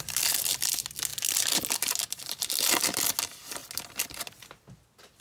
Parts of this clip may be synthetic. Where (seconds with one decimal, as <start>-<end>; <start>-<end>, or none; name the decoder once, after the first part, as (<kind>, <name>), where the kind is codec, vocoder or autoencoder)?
none